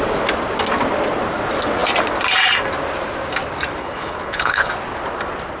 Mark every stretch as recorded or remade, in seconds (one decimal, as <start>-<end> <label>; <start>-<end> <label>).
0.0-3.8 recorded; 3.8-4.7 remade; 4.7-5.6 recorded